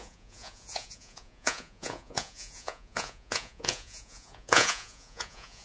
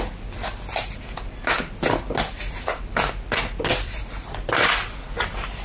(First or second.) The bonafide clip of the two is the second